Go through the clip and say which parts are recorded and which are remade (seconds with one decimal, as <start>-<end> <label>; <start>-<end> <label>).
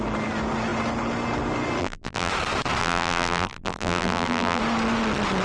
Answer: 0.0-1.8 recorded; 1.8-2.3 remade; 2.3-2.8 recorded; 2.8-4.6 remade; 4.6-5.4 recorded